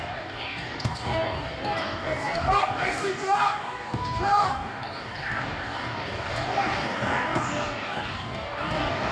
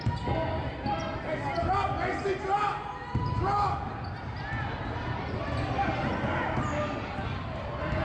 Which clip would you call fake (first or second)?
first